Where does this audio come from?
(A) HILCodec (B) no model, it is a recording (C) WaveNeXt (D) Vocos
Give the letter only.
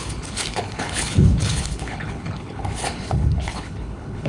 A